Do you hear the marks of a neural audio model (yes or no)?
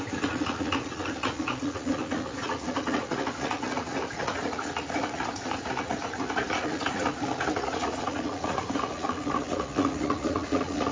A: yes